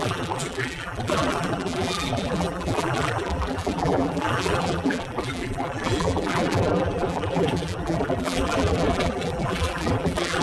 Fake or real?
fake